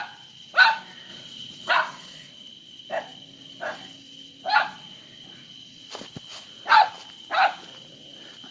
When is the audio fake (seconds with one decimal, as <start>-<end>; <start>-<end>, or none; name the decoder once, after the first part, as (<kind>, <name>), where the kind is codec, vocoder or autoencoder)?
1.1-1.7 (vocoder, Vocos); 6.3-6.9